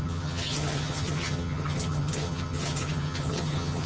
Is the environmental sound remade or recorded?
remade